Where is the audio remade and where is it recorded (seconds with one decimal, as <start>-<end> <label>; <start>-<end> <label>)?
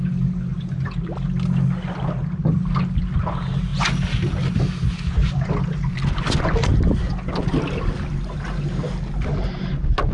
0.0-10.1 recorded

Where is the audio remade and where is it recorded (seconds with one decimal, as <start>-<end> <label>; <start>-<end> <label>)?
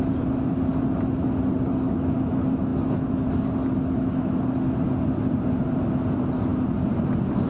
0.0-7.5 recorded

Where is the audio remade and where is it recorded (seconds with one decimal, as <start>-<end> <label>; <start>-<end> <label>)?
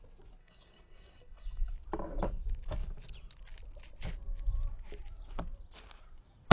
0.0-0.4 recorded; 0.4-1.7 remade; 1.7-6.5 recorded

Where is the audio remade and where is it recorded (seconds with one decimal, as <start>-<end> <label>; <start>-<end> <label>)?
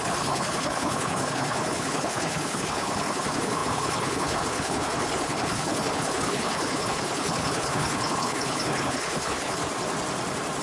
0.0-9.6 remade; 9.6-10.6 recorded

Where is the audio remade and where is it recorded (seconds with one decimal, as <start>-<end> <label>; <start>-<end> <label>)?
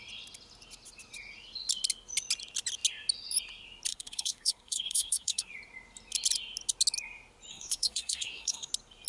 0.0-3.9 recorded; 3.9-5.5 remade; 5.5-7.5 recorded; 7.5-8.7 remade; 8.7-9.1 recorded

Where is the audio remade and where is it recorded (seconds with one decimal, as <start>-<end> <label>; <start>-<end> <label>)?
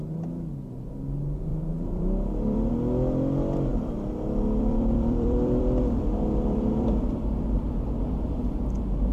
0.0-1.5 recorded; 1.5-2.7 remade; 2.7-3.7 recorded; 3.7-7.8 remade; 7.8-9.1 recorded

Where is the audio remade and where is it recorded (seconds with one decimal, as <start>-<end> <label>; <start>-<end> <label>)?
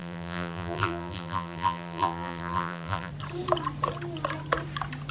0.0-3.1 remade; 3.1-5.1 recorded